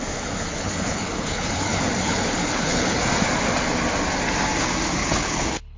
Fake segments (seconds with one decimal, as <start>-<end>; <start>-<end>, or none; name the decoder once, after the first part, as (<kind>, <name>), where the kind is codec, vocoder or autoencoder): 0.5-3.0 (codec, HILCodec); 5.0-5.8

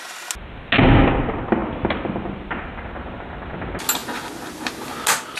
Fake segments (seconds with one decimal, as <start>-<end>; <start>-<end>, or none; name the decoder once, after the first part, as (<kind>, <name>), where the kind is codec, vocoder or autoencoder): none

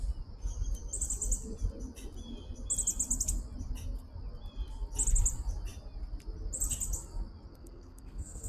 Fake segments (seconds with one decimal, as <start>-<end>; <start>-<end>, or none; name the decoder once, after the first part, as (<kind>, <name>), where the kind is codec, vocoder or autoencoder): 7.5-8.5 (codec, SNAC)

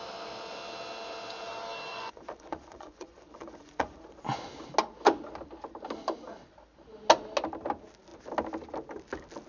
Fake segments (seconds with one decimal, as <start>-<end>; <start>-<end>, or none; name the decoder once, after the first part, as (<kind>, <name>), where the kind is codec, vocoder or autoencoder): 1.9-4.0 (vocoder, Vocos)